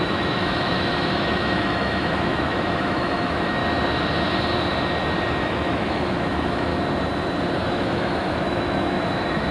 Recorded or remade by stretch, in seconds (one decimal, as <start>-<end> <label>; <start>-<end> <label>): 0.0-3.6 remade; 3.6-5.4 recorded; 5.4-6.7 remade; 6.7-7.6 recorded; 7.6-9.5 remade